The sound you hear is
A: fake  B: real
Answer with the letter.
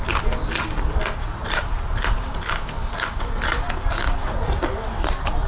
B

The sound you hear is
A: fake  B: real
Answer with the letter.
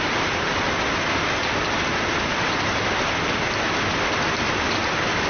B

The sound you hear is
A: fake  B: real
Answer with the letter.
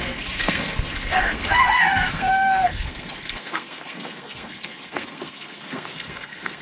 A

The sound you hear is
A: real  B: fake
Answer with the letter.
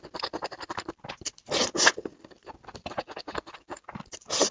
A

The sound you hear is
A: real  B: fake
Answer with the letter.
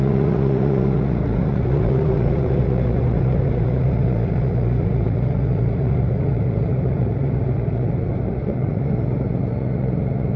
B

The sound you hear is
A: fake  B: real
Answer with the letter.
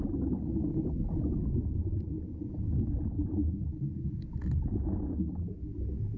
B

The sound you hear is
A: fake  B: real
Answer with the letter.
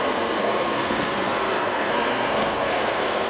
A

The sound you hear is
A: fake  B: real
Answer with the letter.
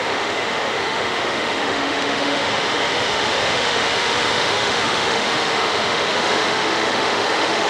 A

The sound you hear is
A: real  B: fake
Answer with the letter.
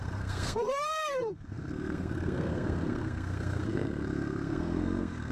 B